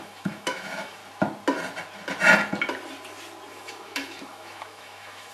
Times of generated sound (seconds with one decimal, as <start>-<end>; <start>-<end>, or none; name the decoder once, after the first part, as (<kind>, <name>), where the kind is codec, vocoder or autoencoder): 0.0-1.0 (autoencoder, DAC-VAE); 3.5-5.3